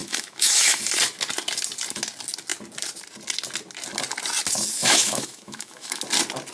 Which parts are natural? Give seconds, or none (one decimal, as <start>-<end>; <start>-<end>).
0.8-4.8; 6.0-6.5